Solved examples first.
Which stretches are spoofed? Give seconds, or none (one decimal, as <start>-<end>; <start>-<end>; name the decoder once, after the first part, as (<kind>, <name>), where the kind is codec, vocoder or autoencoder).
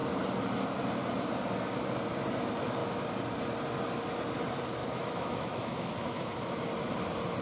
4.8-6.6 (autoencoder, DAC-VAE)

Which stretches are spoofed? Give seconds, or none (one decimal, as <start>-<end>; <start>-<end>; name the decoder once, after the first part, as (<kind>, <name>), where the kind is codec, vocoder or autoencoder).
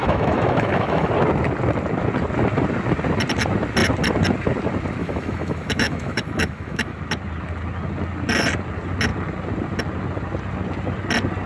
0.0-1.1 (autoencoder, DAC-VAE); 5.0-7.0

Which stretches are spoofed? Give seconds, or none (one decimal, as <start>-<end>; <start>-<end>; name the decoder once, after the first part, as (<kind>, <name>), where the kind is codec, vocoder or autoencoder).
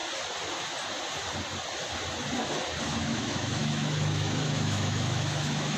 2.8-5.8 (autoencoder, DAC-VAE)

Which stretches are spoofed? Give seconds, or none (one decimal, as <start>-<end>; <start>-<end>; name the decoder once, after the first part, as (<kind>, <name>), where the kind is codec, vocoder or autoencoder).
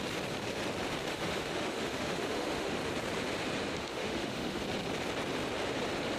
1.1-2.8 (autoencoder, DAC-VAE); 3.8-4.6